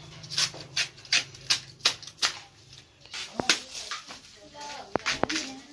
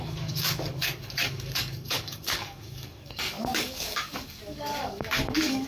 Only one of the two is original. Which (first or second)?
first